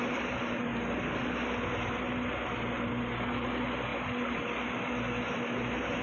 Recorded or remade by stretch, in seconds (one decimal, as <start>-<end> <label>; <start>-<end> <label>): 0.0-6.0 recorded